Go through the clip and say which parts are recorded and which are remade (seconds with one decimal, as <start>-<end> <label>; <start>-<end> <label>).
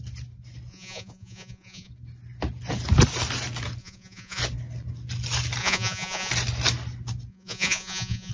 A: 0.0-0.7 recorded; 0.7-1.9 remade; 1.9-3.8 recorded; 3.8-4.4 remade; 4.4-5.6 recorded; 5.6-6.3 remade; 6.3-7.3 recorded; 7.3-8.3 remade